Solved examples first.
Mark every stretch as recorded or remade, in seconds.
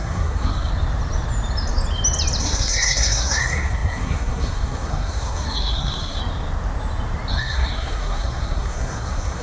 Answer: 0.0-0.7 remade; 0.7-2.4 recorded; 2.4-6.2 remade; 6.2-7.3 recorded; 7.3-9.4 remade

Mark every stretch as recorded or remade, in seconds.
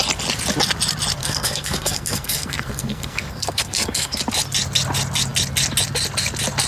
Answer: 0.0-1.2 recorded; 1.2-4.2 remade; 4.2-6.7 recorded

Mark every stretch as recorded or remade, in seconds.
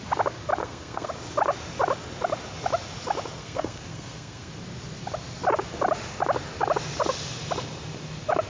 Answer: 0.0-0.6 recorded; 0.6-1.1 remade; 1.1-3.4 recorded; 3.4-4.5 remade; 4.5-8.5 recorded